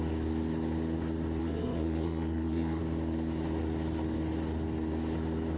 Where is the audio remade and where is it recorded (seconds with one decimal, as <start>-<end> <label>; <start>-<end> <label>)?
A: 0.0-1.4 recorded; 1.4-2.8 remade; 2.8-5.6 recorded